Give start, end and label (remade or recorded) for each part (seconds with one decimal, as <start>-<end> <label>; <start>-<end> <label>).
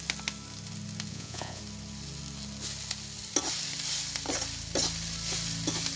0.0-1.1 recorded; 1.1-1.6 remade; 1.6-6.0 recorded